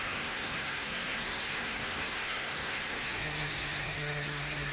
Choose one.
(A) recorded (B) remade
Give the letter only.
B